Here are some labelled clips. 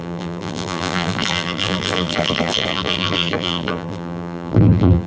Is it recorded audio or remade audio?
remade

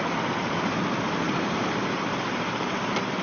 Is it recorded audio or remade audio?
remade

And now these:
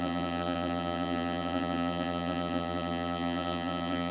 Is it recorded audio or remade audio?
remade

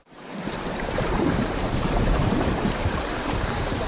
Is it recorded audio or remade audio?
remade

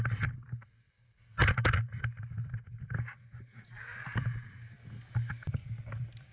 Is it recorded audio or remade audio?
recorded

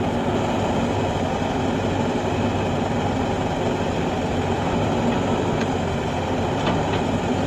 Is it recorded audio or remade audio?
recorded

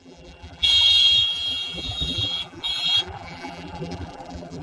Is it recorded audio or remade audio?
remade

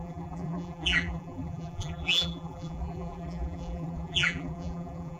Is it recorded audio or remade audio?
remade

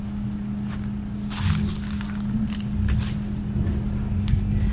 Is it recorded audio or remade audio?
recorded